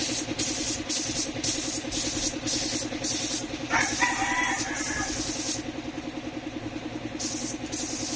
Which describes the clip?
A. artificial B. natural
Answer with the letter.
B